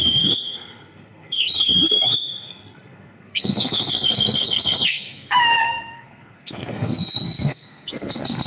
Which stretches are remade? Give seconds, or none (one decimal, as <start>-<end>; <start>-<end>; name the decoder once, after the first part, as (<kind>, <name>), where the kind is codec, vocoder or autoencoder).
0.0-8.5 (codec, SNAC)